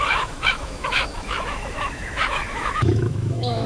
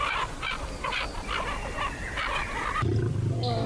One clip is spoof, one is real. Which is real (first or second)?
second